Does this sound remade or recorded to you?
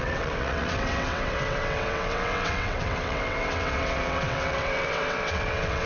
remade